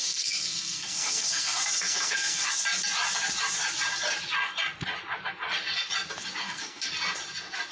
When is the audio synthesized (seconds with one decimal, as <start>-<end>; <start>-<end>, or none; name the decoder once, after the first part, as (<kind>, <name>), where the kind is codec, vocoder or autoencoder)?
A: 0.0-2.5 (codec, SNAC); 6.4-6.9